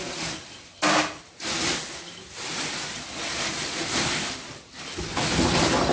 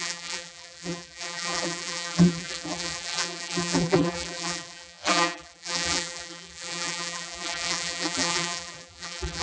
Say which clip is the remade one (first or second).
second